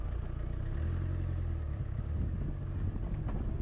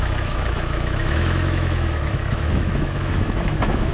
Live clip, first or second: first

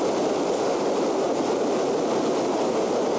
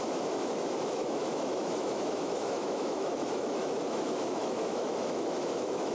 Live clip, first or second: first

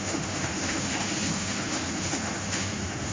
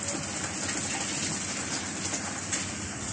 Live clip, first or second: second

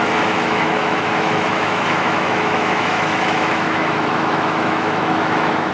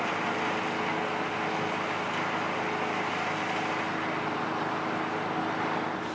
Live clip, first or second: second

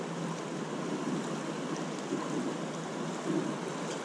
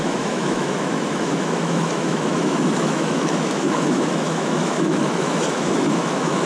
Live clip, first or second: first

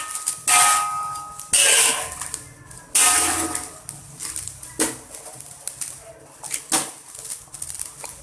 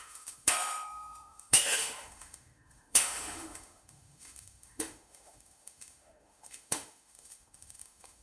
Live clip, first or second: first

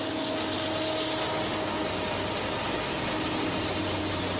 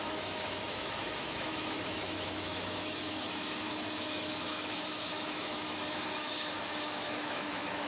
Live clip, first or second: first